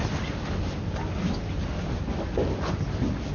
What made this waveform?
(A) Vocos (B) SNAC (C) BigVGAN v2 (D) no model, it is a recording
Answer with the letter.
D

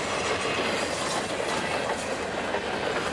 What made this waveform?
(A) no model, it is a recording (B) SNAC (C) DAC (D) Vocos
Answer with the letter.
A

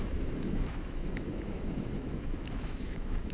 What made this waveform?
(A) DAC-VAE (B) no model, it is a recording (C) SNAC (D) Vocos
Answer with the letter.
A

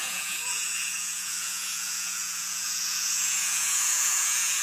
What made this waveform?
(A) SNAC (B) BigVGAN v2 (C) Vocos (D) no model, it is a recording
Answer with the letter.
C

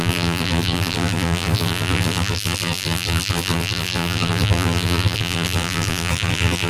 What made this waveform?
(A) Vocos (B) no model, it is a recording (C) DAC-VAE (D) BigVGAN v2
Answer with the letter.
D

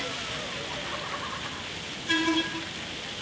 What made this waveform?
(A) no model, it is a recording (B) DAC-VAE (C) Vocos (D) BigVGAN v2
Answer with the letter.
A